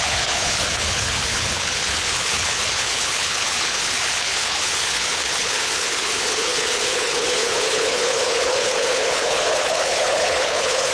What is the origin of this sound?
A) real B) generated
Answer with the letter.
B